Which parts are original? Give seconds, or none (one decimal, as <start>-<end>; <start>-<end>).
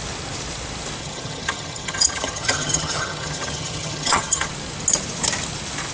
0.0-1.0; 4.5-5.9